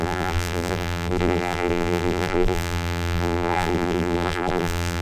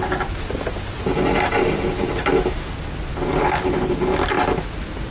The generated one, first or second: first